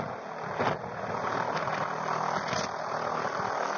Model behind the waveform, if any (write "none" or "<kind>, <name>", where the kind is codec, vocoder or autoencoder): none